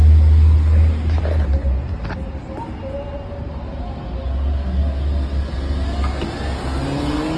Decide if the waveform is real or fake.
real